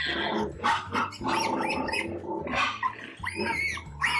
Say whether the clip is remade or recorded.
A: recorded